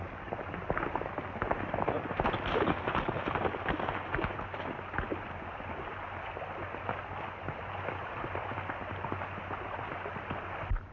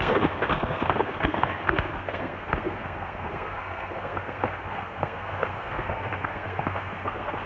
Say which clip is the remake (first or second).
second